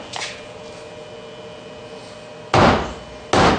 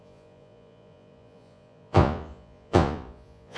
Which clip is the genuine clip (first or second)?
first